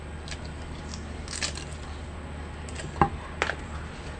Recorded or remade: recorded